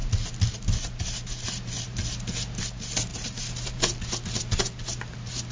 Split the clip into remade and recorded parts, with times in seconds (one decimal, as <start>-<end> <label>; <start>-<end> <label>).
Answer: 0.0-3.1 recorded; 3.1-3.8 remade; 3.8-5.5 recorded